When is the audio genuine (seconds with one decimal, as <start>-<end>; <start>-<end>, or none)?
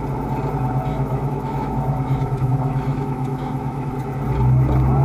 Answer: 0.0-0.9; 3.9-5.0